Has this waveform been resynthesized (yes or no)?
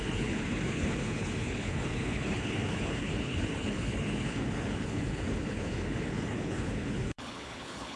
yes